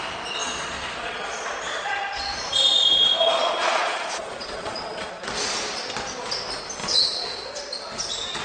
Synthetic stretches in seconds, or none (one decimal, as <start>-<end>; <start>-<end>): 0.4-5.1; 6.8-7.5